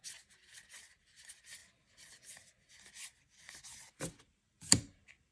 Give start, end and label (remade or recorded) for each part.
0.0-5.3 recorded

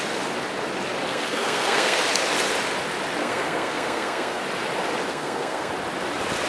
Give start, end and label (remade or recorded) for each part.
0.0-1.1 recorded; 1.1-2.0 remade; 2.0-3.2 recorded; 3.2-4.4 remade; 4.4-5.1 recorded; 5.1-5.7 remade; 5.7-6.5 recorded

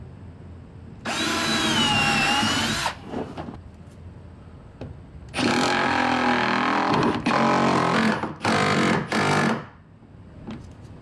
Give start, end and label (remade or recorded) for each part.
0.0-11.0 recorded

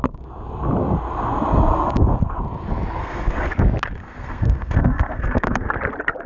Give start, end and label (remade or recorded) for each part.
0.0-3.0 recorded; 3.0-3.5 remade; 3.5-4.0 recorded; 4.0-5.7 remade; 5.7-6.3 recorded

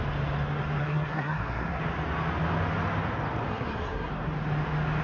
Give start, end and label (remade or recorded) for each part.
0.0-0.8 recorded; 0.8-1.8 remade; 1.8-3.5 recorded; 3.5-4.1 remade; 4.1-5.0 recorded

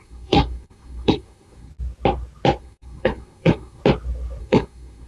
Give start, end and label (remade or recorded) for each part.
0.0-1.7 remade; 1.7-2.6 recorded; 2.6-3.8 remade; 3.8-4.4 recorded; 4.4-5.1 remade

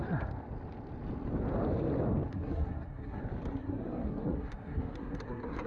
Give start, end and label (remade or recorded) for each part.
0.0-2.3 recorded; 2.3-3.2 remade; 3.2-3.6 recorded; 3.6-5.7 remade

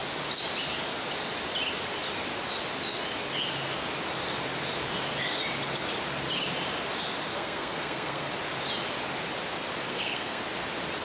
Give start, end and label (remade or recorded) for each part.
0.0-7.3 recorded; 7.3-8.3 remade; 8.3-9.9 recorded; 9.9-10.4 remade; 10.4-11.0 recorded